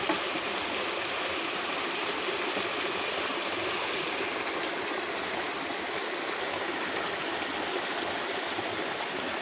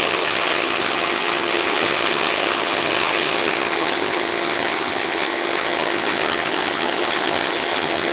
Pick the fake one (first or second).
second